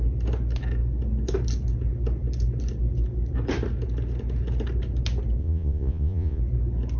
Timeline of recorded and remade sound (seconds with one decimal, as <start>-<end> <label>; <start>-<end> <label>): 0.0-5.4 recorded; 5.4-6.4 remade; 6.4-7.0 recorded